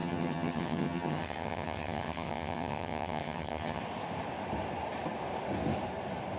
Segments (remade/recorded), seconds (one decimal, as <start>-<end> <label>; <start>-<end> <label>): 0.0-3.8 remade; 3.8-6.4 recorded